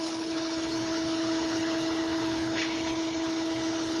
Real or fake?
fake